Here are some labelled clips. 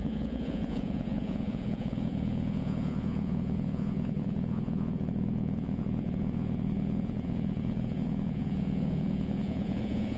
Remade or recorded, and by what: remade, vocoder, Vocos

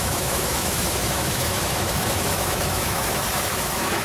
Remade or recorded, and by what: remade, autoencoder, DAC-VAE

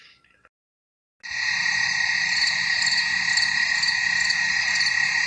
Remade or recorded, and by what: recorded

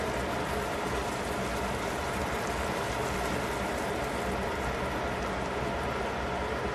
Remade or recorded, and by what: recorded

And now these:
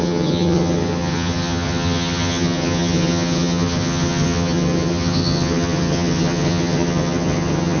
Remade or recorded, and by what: remade, vocoder, HiFi-GAN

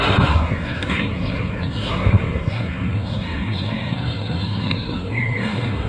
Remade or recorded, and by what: remade, codec, SNAC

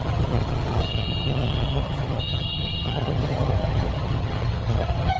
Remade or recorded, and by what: remade, vocoder, HiFi-GAN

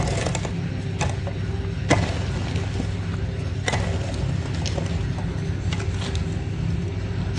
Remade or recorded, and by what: recorded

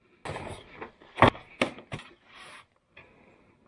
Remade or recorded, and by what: recorded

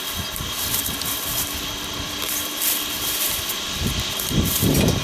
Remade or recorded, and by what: remade, vocoder, BigVGAN v2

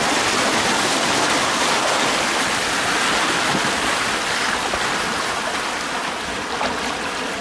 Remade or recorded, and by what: recorded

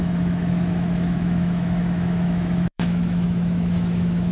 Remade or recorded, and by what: remade, autoencoder, DAC-VAE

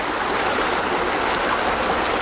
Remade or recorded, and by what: recorded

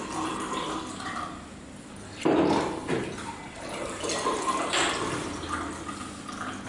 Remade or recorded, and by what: recorded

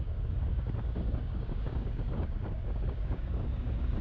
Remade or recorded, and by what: remade, codec, DAC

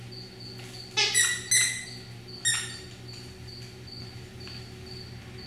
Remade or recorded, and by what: recorded